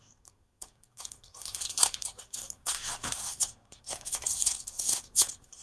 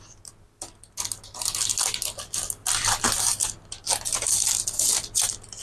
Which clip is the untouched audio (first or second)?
second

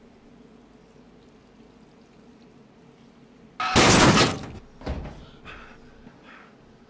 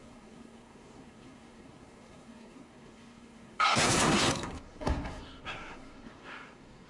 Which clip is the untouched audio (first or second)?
first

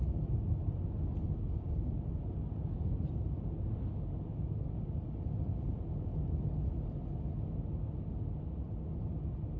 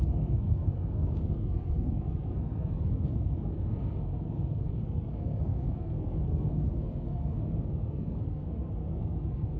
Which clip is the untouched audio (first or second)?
first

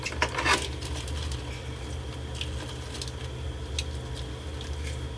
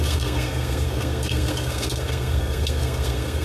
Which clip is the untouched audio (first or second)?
first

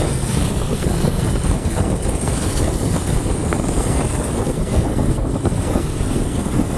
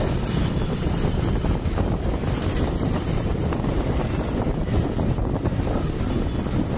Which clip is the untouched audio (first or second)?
second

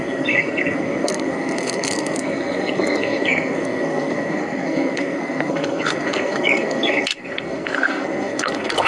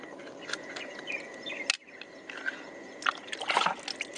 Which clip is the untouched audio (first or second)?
second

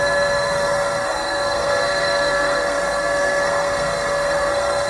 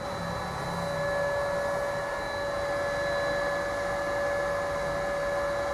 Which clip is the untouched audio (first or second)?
second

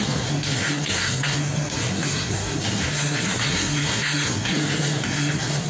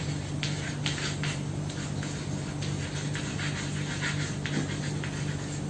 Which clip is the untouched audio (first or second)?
second